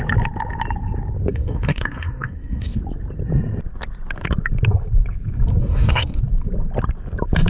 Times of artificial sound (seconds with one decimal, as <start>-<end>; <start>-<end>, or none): 1.3-2.8; 5.6-6.2